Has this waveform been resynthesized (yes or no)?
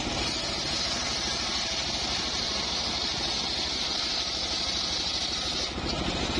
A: no